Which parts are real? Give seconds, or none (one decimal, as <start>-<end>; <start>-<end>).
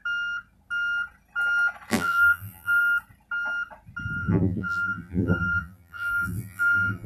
0.0-1.9; 2.8-4.2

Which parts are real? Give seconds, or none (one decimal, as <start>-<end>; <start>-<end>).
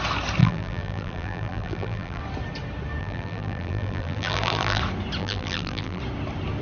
0.0-0.4; 2.2-3.0; 4.8-5.2; 6.0-6.6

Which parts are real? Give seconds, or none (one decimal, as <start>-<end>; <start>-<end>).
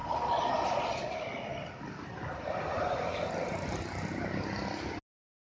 0.0-5.5